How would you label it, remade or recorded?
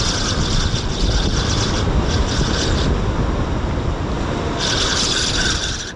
recorded